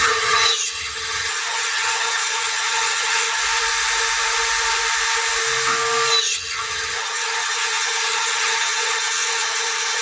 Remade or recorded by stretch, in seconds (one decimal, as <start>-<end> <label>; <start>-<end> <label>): 0.0-3.4 remade; 3.4-6.2 recorded; 6.2-10.0 remade